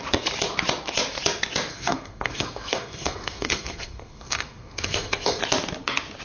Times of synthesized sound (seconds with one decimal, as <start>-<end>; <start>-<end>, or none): 1.7-5.4